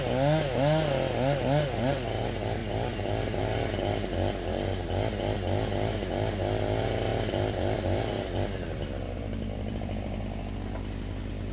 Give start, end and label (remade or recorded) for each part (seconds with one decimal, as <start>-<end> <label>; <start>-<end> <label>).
0.0-2.6 recorded; 2.6-3.4 remade; 3.4-7.1 recorded; 7.1-10.2 remade; 10.2-11.5 recorded